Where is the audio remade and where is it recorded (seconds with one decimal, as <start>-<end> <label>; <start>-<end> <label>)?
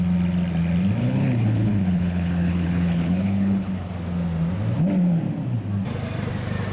0.0-1.0 recorded; 1.0-3.9 remade; 3.9-6.7 recorded